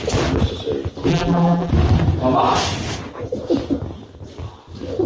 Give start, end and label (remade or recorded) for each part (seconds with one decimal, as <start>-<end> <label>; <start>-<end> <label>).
0.0-1.1 recorded; 1.1-1.7 remade; 1.7-5.1 recorded